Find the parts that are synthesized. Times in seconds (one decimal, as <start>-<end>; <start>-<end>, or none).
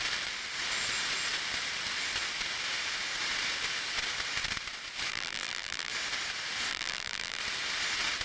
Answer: 5.1-5.9; 6.7-7.4